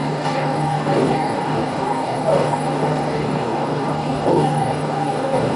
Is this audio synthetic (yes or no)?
yes